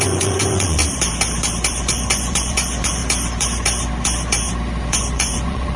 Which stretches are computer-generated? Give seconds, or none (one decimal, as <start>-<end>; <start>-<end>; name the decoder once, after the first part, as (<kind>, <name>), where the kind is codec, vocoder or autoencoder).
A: 0.0-0.8 (vocoder, Vocos); 1.7-3.0; 5.0-5.8